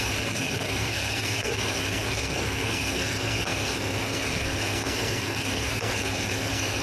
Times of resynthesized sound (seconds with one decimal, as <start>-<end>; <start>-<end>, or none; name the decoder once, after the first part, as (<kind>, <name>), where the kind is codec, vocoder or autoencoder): 0.0-6.8 (codec, SNAC)